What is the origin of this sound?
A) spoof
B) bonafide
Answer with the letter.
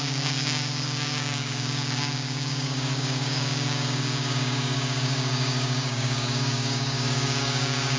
A